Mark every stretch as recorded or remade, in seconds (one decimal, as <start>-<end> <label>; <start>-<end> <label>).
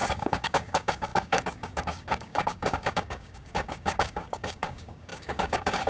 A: 0.0-5.9 remade